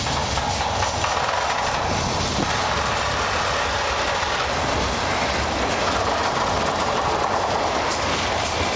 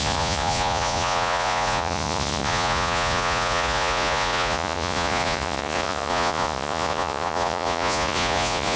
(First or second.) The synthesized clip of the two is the second